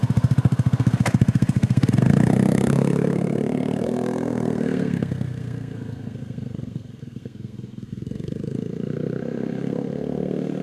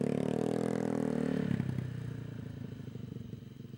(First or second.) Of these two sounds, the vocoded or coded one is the first